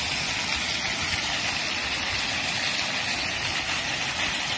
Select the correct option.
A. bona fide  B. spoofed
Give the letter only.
A